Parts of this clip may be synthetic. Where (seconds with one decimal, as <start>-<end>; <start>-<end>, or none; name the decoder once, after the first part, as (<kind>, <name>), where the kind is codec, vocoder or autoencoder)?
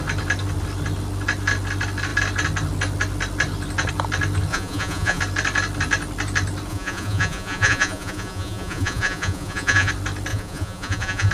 4.5-5.2 (vocoder, Vocos); 6.7-9.9; 10.3-11.3